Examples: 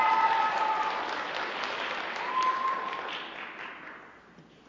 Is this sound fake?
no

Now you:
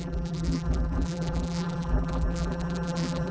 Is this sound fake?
yes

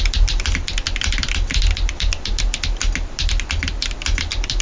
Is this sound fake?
no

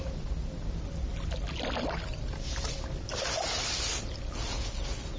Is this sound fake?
no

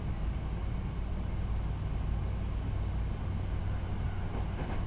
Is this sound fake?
no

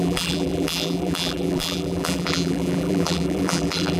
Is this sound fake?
yes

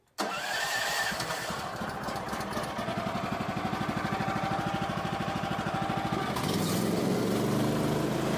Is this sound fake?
no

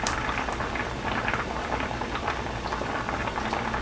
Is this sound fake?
yes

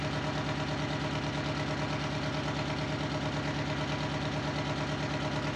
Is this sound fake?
no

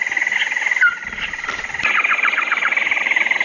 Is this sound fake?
no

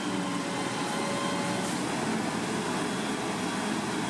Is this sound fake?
no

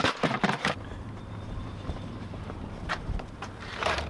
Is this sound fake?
yes